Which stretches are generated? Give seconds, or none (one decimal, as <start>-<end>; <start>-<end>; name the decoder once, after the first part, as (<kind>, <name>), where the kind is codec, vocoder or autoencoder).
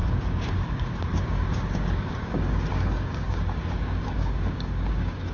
0.0-5.3 (codec, DAC)